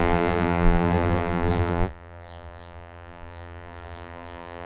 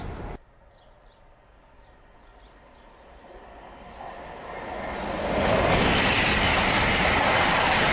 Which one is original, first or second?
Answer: second